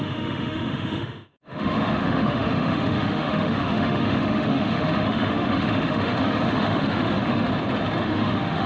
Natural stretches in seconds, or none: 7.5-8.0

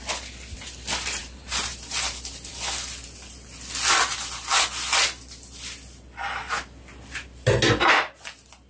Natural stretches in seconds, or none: 0.0-1.2; 2.5-8.7

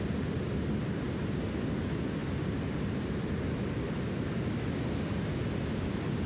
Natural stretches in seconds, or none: 0.0-6.3

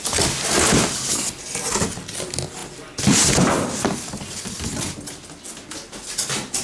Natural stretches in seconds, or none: 0.0-6.6

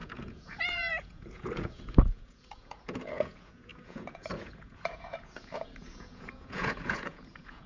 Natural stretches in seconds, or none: none

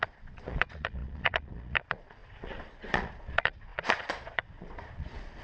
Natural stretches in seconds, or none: none

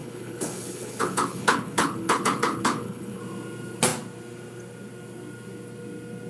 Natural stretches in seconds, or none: 3.2-6.3